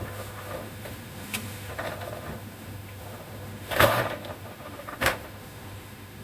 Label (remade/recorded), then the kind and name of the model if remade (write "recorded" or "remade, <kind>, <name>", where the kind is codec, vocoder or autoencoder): remade, autoencoder, DAC-VAE